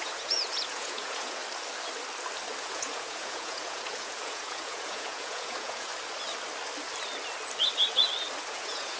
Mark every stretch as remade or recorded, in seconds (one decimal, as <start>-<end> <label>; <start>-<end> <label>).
0.0-1.4 remade; 1.4-2.6 recorded; 2.6-5.9 remade; 5.9-8.5 recorded; 8.5-9.0 remade